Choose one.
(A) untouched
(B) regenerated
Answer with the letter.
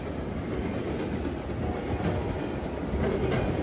A